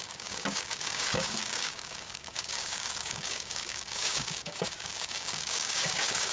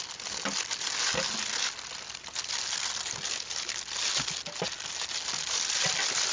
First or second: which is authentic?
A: second